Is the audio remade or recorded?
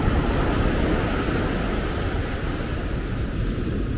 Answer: recorded